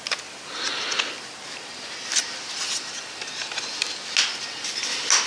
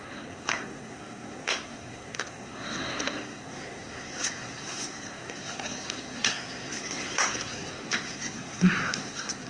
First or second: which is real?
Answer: first